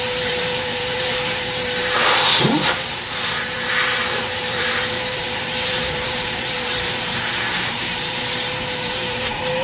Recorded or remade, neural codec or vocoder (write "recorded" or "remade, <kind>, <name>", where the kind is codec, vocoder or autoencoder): remade, vocoder, BigVGAN v2